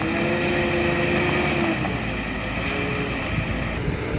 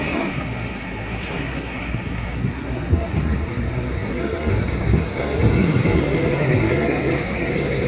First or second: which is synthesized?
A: second